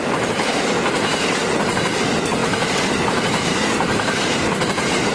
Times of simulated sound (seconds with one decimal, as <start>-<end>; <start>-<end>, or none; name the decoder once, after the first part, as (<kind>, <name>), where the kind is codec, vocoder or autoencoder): 2.4-4.4 (vocoder, BigVGAN v2)